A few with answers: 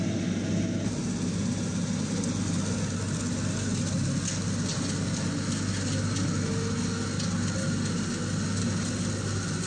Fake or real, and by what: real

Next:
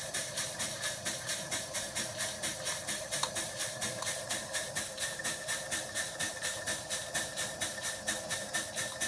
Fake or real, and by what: fake, vocoder, BigVGAN v2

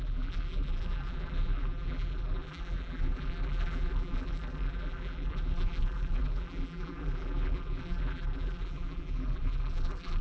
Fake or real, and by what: fake, vocoder, BigVGAN v2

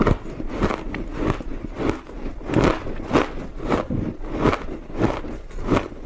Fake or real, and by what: real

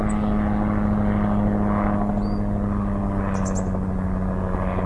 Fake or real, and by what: real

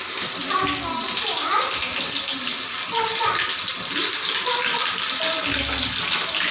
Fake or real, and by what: real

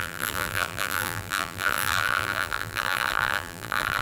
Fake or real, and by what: fake, vocoder, BigVGAN v2